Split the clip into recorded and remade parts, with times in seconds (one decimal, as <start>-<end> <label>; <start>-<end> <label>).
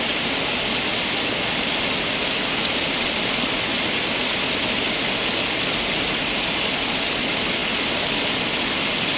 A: 0.0-9.2 recorded